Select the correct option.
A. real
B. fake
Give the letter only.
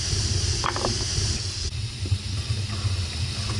A